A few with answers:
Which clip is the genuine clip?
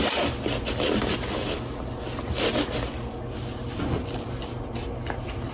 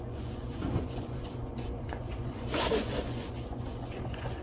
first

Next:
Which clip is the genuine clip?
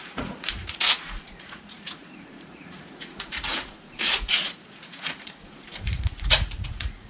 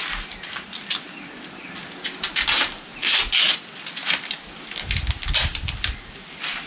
second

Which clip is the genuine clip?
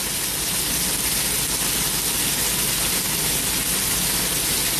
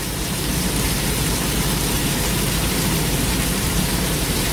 first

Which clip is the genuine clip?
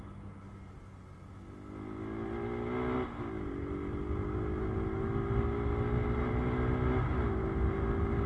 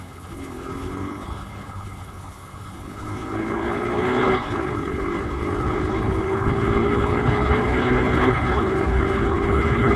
first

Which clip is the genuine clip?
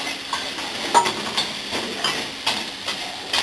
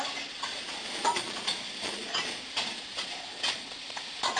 first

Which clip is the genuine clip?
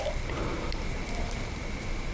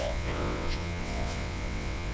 first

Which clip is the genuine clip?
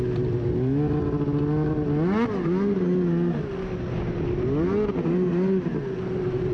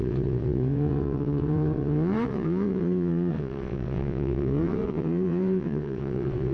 first